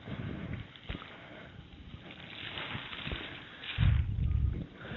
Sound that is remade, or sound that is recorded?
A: recorded